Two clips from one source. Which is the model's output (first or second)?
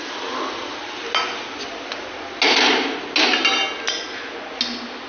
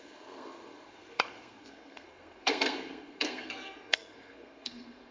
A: second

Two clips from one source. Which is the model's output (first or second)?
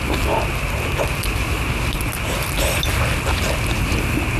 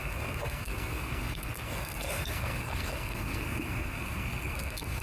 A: second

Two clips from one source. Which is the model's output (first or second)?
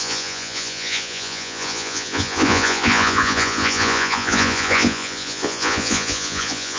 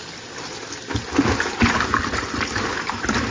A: first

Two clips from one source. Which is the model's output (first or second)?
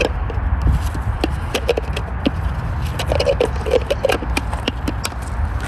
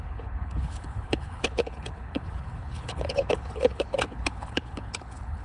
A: second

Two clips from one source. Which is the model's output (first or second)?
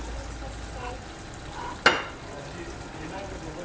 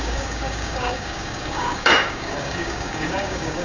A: second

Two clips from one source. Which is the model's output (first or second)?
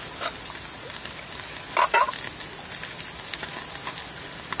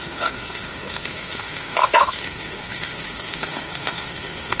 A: second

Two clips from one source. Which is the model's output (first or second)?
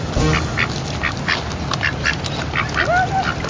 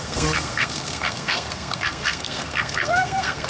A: second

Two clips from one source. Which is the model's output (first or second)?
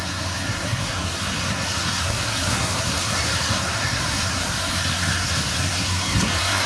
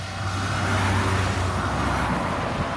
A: first